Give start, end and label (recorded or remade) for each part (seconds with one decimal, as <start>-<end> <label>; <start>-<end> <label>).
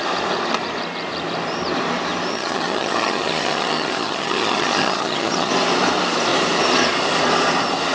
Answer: 0.0-2.3 recorded; 2.3-5.5 remade; 5.5-7.9 recorded